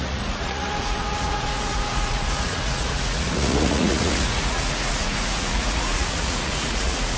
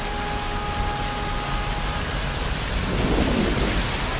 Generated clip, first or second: first